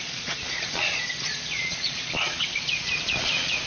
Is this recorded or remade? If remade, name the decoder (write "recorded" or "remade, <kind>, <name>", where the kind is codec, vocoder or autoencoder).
remade, vocoder, Vocos